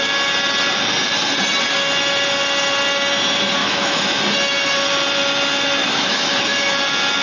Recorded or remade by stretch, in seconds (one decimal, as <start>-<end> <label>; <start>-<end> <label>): 0.0-3.6 recorded; 3.6-4.2 remade; 4.2-5.8 recorded; 5.8-6.6 remade; 6.6-7.2 recorded